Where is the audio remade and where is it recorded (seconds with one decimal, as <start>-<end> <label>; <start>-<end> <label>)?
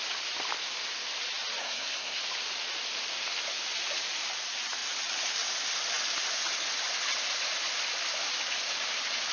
0.0-1.6 recorded; 1.6-2.2 remade; 2.2-9.3 recorded